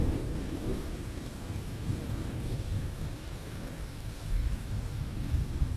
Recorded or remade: remade